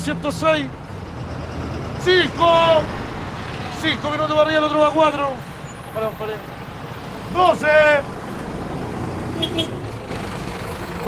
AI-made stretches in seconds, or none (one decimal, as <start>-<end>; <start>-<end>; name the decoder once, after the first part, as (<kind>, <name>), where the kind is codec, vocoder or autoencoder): 10.1-11.1 (autoencoder, DAC-VAE)